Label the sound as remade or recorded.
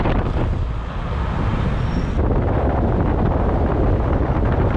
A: recorded